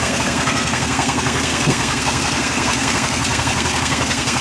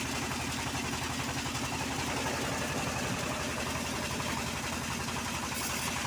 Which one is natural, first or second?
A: second